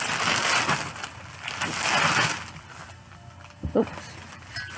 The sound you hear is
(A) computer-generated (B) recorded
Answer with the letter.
B